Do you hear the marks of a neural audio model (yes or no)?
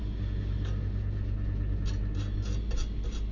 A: no